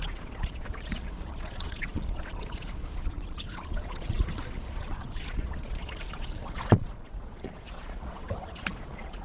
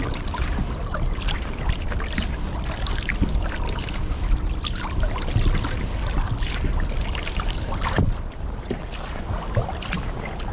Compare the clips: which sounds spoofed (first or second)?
first